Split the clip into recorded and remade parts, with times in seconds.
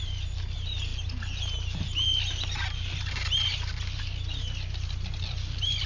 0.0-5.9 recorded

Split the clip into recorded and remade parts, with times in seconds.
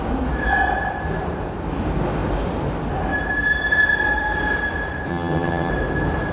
0.0-5.1 recorded; 5.1-5.7 remade; 5.7-6.3 recorded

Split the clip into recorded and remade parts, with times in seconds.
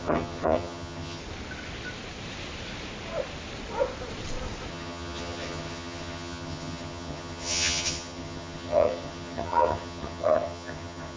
0.0-1.2 remade; 1.2-4.7 recorded; 4.7-11.2 remade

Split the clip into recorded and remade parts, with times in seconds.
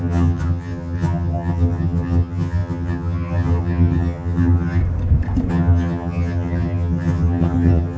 0.0-4.8 remade; 4.8-5.5 recorded; 5.5-8.0 remade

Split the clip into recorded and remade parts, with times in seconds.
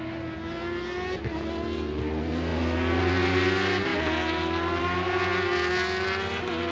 0.0-6.7 recorded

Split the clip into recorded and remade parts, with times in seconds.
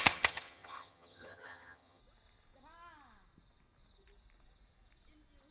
0.0-2.0 remade; 2.0-5.5 recorded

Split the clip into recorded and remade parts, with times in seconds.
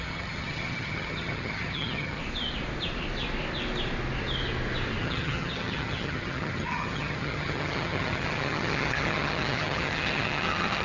0.0-2.2 remade; 2.2-5.0 recorded; 5.0-10.8 remade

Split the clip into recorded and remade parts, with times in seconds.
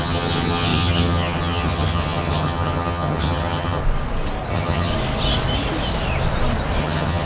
0.0-3.8 remade; 3.8-4.5 recorded; 4.5-4.9 remade; 4.9-6.8 recorded; 6.8-7.2 remade